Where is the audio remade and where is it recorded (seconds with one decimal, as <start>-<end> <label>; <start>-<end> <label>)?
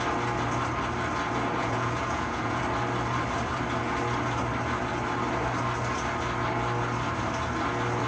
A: 0.0-1.6 recorded; 1.6-2.6 remade; 2.6-8.1 recorded